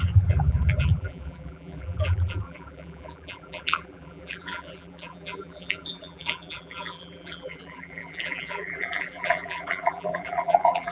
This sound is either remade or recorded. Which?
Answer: remade